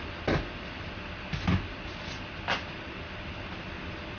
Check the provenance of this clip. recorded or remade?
recorded